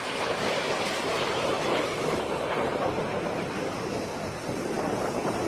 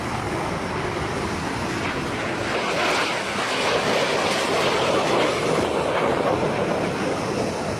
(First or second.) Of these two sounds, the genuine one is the second